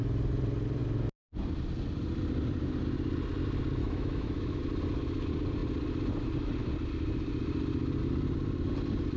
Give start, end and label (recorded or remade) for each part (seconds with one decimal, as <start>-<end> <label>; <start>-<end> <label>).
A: 0.0-3.8 recorded; 3.8-4.6 remade; 4.6-9.2 recorded